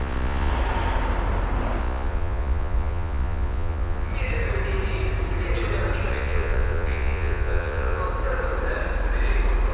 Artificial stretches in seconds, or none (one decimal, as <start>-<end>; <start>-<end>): 0.0-0.5; 1.8-4.1; 6.1-8.0